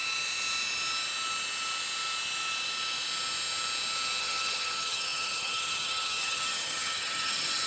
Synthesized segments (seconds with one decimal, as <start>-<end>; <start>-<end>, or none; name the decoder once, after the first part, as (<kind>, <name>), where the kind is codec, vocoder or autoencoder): 4.2-7.7 (vocoder, HiFi-GAN)